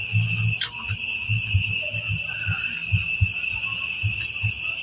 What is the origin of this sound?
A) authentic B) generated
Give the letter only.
A